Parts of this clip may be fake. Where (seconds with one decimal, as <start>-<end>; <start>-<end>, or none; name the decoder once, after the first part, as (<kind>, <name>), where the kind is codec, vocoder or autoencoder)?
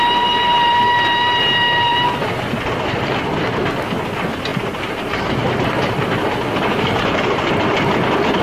4.5-5.2 (vocoder, BigVGAN v2); 6.5-7.5